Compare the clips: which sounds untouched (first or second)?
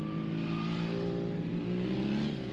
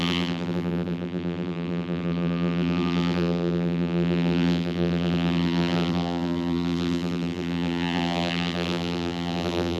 first